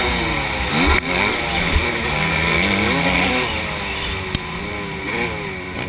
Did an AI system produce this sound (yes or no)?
no